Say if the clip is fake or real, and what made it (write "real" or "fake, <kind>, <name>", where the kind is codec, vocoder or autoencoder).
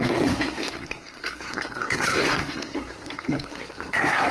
fake, codec, SNAC